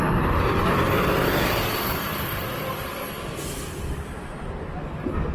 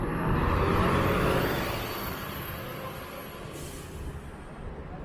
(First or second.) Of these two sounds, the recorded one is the second